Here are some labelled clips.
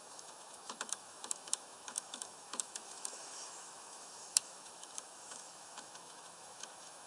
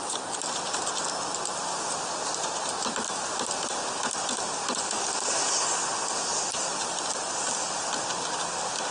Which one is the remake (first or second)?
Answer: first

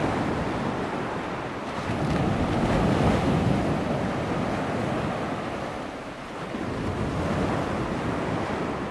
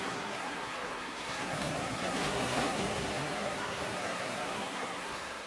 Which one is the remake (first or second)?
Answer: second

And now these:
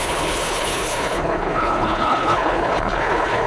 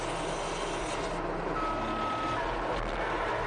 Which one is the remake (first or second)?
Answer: first